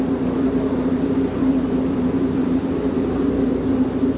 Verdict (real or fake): real